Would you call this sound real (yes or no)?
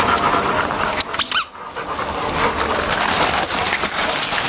yes